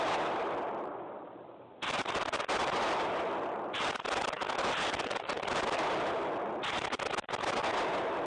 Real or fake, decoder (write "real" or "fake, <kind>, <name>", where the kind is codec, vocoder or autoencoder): real